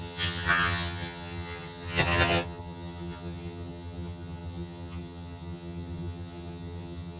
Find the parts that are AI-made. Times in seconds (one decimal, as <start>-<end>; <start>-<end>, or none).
0.0-7.2